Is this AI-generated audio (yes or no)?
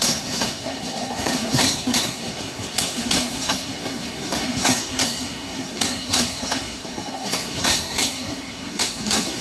yes